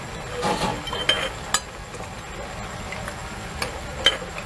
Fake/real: real